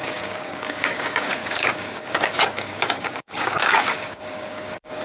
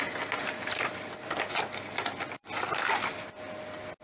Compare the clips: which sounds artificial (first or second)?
first